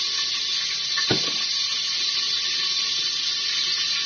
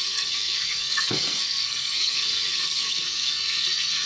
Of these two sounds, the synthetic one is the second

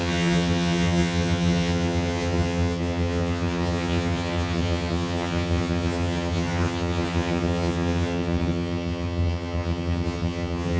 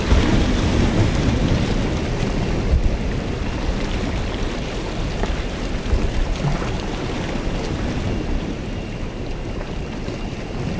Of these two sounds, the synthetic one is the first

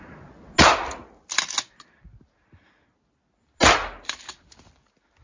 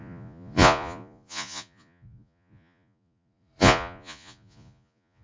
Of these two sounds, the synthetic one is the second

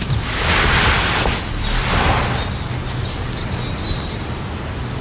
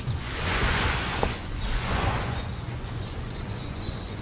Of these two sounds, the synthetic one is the second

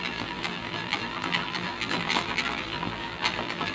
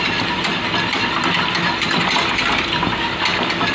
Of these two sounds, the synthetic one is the first